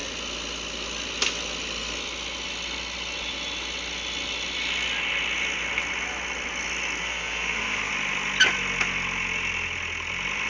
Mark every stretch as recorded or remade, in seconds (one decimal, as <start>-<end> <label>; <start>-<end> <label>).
0.0-7.0 recorded; 7.0-7.9 remade; 7.9-10.5 recorded